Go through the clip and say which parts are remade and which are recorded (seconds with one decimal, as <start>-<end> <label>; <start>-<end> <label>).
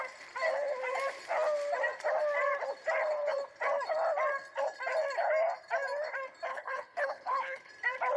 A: 0.0-6.5 recorded; 6.5-7.7 remade; 7.7-8.2 recorded